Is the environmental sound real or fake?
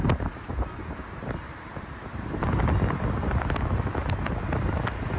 real